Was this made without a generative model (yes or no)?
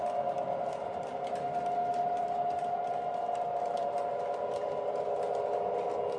yes